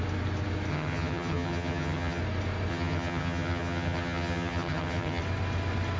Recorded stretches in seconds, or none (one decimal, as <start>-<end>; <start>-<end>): 0.0-0.7; 2.2-2.7; 5.2-6.0